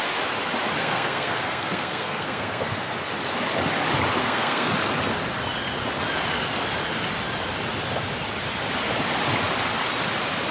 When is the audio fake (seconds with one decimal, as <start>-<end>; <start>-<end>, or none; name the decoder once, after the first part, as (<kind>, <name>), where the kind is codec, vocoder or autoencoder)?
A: 0.8-2.9 (codec, SNAC); 4.2-4.7